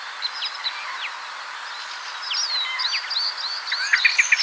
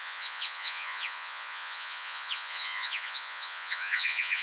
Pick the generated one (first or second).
second